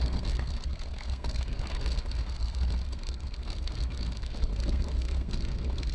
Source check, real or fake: fake